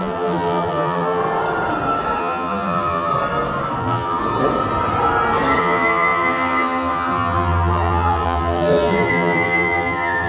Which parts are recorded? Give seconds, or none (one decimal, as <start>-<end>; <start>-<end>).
1.2-2.2; 3.1-3.8; 4.2-5.6